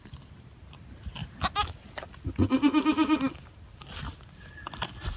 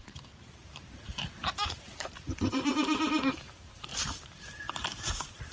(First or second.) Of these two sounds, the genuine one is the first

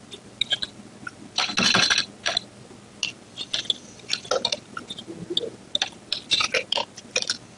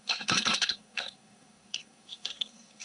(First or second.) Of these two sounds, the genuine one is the first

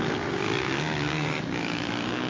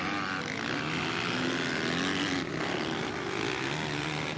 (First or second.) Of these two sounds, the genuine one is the second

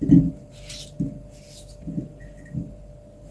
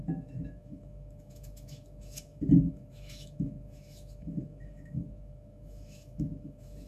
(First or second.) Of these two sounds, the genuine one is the first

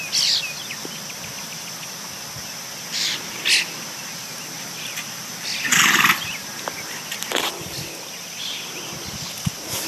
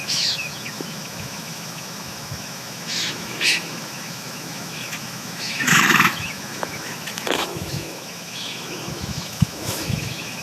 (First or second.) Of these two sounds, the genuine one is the first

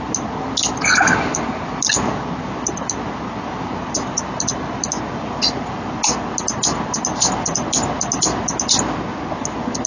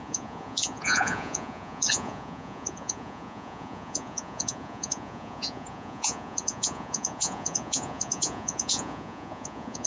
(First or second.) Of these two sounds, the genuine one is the first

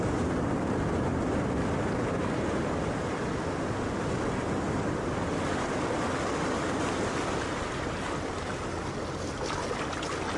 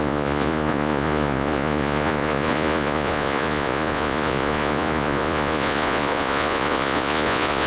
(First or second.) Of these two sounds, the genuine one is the first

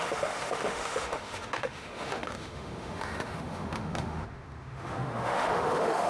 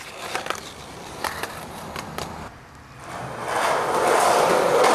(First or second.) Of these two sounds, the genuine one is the second